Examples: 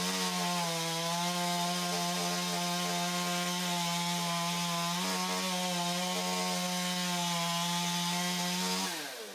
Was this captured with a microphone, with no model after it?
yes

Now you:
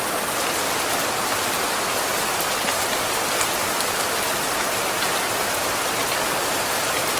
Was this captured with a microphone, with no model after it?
yes